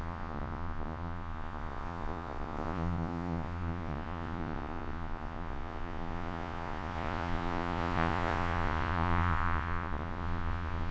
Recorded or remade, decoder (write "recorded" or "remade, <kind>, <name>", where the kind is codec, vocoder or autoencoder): remade, vocoder, Vocos